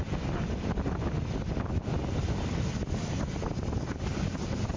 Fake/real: real